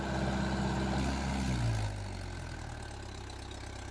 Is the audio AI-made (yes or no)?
no